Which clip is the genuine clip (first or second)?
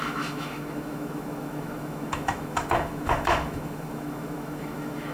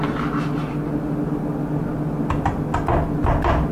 second